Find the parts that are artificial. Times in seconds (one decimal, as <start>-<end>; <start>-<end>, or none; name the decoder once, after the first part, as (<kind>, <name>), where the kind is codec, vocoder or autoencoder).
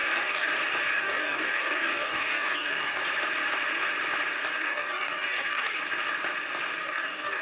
0.0-0.5 (codec, DAC); 0.9-3.0; 4.6-5.8; 6.8-7.4